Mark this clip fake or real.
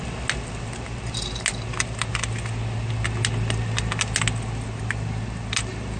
real